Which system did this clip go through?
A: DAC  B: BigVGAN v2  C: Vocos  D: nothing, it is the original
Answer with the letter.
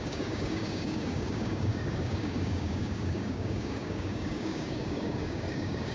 A